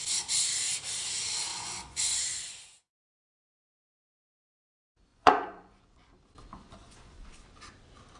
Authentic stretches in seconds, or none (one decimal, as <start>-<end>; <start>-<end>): 0.0-1.5; 4.0-5.1; 6.1-6.5; 7.3-8.2